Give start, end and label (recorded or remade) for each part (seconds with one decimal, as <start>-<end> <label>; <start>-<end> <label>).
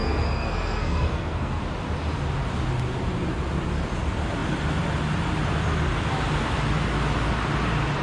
0.0-1.6 remade; 1.6-8.0 recorded